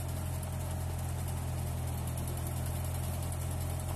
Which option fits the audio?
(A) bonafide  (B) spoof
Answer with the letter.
A